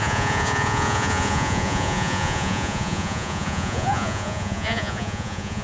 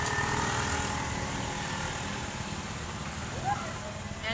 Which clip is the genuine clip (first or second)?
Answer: second